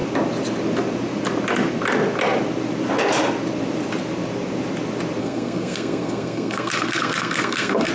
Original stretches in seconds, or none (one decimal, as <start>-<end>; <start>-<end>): 0.0-5.2